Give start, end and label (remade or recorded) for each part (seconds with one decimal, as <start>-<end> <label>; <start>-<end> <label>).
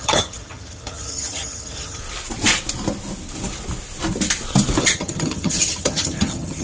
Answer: 0.0-2.0 remade; 2.0-4.8 recorded; 4.8-6.6 remade